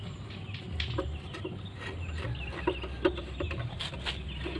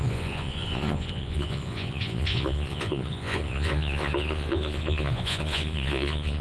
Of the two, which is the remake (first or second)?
second